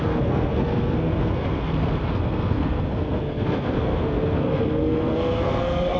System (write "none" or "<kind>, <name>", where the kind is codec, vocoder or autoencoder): codec, SNAC